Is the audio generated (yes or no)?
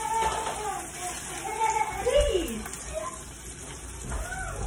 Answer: no